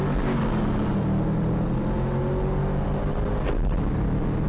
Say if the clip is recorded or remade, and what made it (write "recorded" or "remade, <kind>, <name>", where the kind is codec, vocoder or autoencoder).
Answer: recorded